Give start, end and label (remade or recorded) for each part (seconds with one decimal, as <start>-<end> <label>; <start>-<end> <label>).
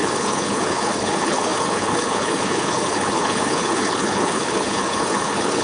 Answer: 0.0-5.6 remade